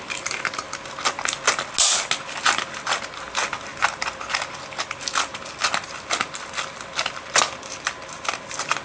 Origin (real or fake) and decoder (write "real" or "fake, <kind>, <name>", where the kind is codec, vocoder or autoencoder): real